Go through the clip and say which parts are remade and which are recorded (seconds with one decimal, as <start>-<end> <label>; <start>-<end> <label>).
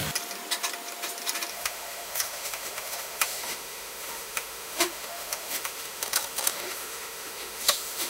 0.0-1.5 recorded; 1.5-8.1 remade